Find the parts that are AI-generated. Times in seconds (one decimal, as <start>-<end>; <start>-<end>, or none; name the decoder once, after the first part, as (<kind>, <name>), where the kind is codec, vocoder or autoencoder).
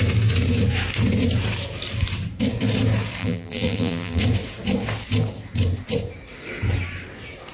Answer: 3.2-4.2 (vocoder, BigVGAN v2)